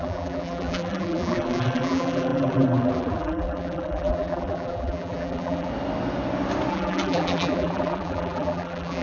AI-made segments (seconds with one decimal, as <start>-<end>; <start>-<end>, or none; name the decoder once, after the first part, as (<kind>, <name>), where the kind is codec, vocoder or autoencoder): 0.0-5.7 (vocoder, BigVGAN v2); 6.7-9.0